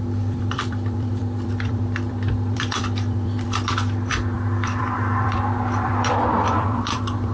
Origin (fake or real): fake